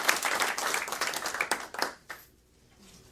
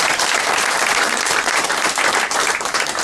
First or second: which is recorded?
first